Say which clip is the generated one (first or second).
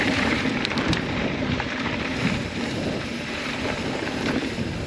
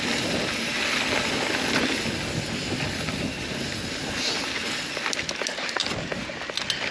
first